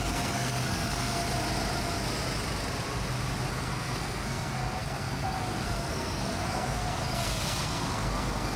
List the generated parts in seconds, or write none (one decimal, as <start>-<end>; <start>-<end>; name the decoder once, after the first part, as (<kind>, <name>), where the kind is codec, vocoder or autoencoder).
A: 0.0-1.2 (codec, SNAC); 3.5-8.6